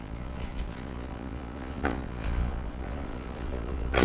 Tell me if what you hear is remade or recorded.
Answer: remade